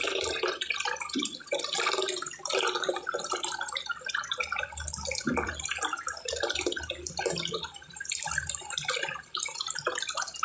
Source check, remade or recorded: remade